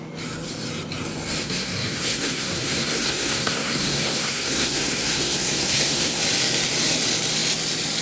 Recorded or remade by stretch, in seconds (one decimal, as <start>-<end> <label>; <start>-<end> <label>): 0.0-1.4 recorded; 1.4-6.2 remade; 6.2-8.0 recorded